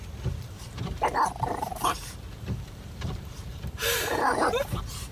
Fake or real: fake